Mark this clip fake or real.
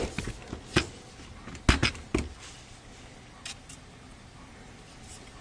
real